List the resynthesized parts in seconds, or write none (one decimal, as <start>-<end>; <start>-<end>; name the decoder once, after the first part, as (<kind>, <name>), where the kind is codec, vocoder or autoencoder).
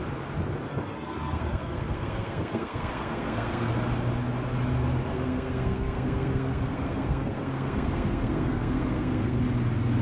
0.7-3.7 (codec, SNAC); 5.1-9.4